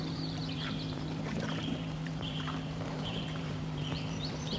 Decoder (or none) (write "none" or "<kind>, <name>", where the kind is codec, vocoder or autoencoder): vocoder, BigVGAN v2